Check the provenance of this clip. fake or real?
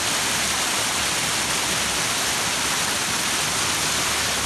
real